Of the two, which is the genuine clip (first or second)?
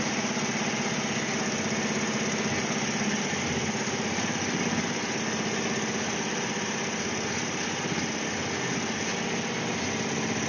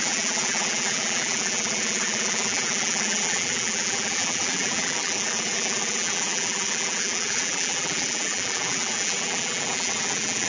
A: first